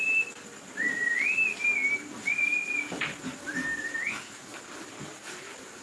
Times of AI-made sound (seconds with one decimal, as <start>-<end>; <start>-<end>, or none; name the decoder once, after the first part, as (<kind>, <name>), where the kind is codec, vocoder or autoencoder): none